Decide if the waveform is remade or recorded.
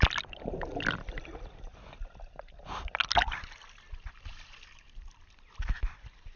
recorded